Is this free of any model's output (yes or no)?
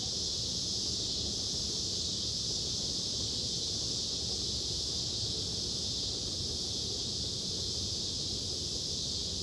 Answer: yes